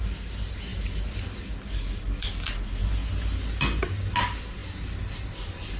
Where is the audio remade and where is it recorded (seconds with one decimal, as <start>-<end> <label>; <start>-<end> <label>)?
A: 0.0-5.8 recorded